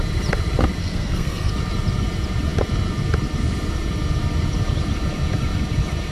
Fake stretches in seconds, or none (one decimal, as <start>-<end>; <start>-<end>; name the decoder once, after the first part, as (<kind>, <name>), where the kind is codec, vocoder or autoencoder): 0.8-1.5 (codec, SNAC)